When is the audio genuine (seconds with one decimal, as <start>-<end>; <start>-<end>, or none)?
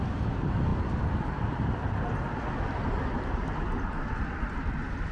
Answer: 0.0-5.1